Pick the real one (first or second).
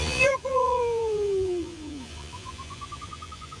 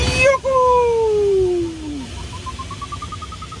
second